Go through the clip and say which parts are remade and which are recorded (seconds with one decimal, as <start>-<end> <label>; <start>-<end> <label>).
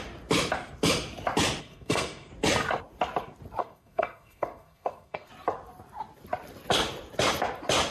0.0-1.6 recorded; 1.6-2.3 remade; 2.3-3.6 recorded; 3.6-5.3 remade; 5.3-7.9 recorded